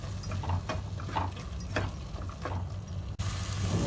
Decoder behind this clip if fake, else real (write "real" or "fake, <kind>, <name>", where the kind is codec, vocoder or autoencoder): real